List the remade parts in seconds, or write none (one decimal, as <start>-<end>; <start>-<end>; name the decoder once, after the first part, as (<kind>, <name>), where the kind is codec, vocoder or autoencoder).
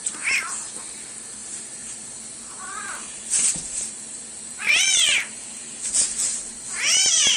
1.4-5.8 (vocoder, BigVGAN v2)